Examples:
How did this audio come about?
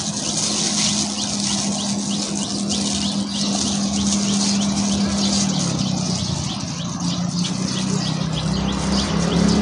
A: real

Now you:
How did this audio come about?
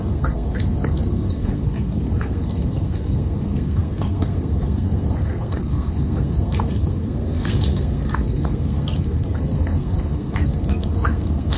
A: fake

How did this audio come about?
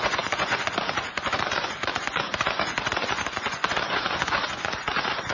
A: fake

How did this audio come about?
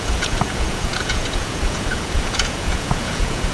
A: fake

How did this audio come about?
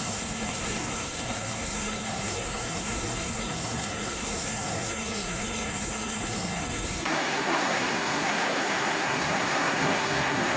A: fake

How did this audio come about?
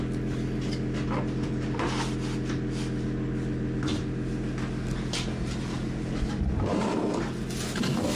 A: real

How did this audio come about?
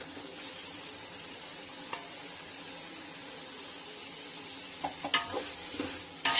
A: real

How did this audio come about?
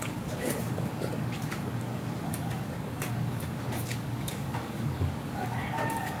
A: fake